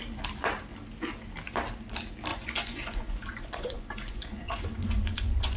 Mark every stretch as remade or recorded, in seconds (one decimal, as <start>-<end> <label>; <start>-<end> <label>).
0.0-2.3 recorded; 2.3-5.6 remade